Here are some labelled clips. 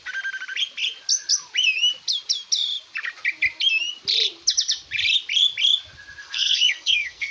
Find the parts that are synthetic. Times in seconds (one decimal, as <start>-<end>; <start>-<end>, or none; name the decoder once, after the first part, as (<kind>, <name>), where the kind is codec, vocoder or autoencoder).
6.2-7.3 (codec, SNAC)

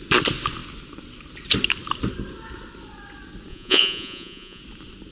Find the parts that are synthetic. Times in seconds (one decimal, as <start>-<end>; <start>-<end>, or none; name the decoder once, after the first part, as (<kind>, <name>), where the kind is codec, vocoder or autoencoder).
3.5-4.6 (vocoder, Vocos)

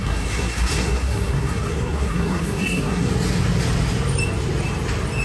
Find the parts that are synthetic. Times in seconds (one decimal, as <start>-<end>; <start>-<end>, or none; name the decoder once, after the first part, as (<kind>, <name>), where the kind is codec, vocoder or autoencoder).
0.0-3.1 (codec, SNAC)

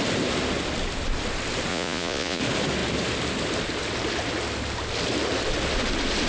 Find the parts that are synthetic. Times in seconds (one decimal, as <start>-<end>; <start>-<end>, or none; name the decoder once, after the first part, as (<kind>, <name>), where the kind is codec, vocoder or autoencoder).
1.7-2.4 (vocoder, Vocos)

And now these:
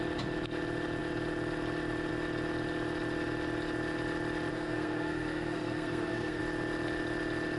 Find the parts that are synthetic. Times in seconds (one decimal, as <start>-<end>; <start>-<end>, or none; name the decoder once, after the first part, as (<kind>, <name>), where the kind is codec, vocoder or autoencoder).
4.5-6.4 (codec, SNAC)

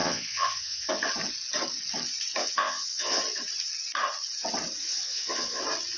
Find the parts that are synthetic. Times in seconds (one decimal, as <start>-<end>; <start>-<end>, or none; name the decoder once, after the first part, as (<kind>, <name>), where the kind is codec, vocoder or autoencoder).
0.0-0.9 (vocoder, Vocos); 2.4-3.2; 4.8-5.6